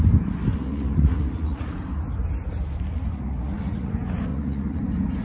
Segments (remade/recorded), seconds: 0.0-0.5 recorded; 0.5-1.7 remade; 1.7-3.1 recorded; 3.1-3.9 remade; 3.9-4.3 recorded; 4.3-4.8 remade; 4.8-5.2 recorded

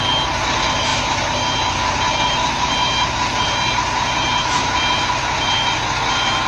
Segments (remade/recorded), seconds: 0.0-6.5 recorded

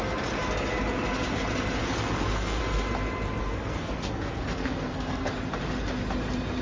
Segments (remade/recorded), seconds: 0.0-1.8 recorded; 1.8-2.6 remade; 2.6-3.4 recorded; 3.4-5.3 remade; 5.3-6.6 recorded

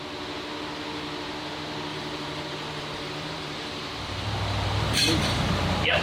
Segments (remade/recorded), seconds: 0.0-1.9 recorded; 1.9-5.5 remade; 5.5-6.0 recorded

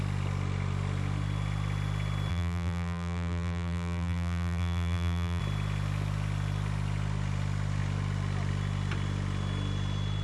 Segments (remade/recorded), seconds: 0.0-2.3 recorded; 2.3-5.4 remade; 5.4-10.2 recorded

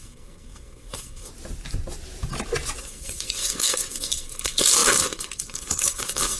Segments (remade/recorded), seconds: 0.0-1.3 remade; 1.3-2.8 recorded; 2.8-6.4 remade

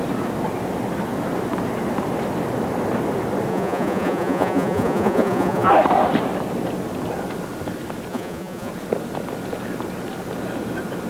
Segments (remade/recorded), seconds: 0.0-3.5 recorded; 3.5-5.7 remade; 5.7-8.1 recorded; 8.1-8.7 remade; 8.7-11.1 recorded